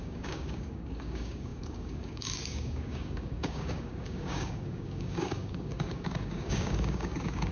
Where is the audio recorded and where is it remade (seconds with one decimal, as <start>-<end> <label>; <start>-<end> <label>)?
0.0-7.5 remade